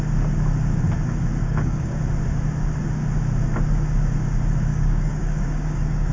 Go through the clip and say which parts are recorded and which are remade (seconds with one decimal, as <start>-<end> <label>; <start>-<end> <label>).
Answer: 0.0-1.4 recorded; 1.4-2.0 remade; 2.0-4.7 recorded; 4.7-6.1 remade